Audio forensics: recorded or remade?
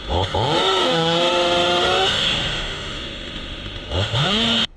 remade